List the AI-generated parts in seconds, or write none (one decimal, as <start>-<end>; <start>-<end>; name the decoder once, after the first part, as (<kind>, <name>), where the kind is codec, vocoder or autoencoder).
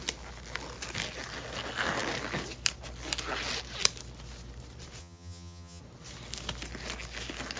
5.0-5.8 (vocoder, HiFi-GAN)